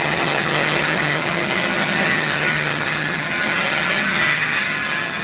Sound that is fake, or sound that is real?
fake